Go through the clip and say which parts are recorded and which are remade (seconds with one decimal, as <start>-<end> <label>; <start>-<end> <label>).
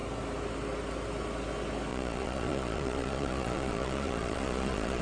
0.0-1.9 recorded; 1.9-5.0 remade